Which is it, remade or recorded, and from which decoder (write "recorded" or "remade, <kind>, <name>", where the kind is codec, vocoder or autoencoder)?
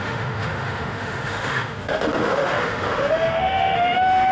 remade, autoencoder, DAC-VAE